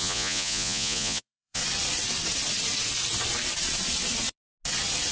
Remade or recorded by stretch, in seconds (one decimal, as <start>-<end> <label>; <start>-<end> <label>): 0.0-1.6 remade; 1.6-5.1 recorded